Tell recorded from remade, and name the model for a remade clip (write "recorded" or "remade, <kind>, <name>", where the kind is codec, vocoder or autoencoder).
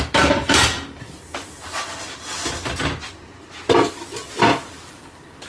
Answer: recorded